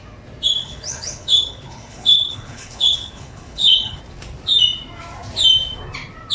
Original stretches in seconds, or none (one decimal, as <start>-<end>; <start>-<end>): 0.0-0.6; 4.0-6.3